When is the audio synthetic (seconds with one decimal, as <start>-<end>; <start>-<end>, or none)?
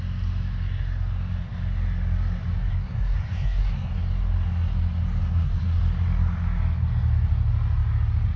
2.7-4.0; 5.2-5.8